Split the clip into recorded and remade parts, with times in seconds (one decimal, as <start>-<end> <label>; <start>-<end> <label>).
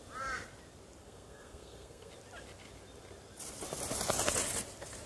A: 0.0-1.0 recorded; 1.0-2.1 remade; 2.1-5.1 recorded